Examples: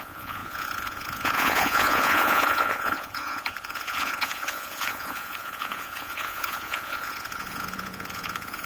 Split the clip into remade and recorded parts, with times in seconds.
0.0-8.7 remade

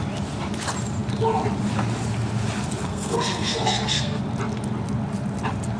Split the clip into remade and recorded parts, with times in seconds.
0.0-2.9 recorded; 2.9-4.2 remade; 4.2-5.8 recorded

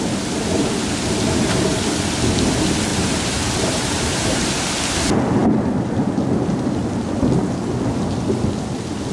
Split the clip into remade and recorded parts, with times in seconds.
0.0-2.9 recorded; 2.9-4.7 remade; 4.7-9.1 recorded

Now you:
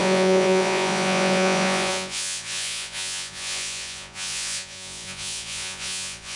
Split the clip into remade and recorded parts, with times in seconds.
0.0-6.4 remade

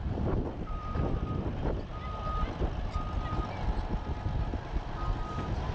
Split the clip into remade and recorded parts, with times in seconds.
0.0-1.9 remade; 1.9-5.3 recorded; 5.3-5.7 remade

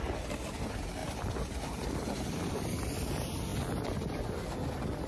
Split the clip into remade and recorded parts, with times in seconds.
0.0-1.0 recorded; 1.0-3.1 remade; 3.1-5.1 recorded

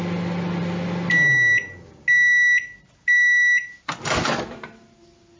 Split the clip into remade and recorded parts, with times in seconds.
0.0-5.4 recorded